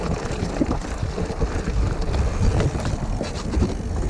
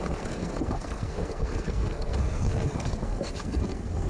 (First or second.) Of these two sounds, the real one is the first